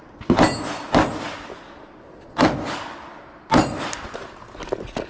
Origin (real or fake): real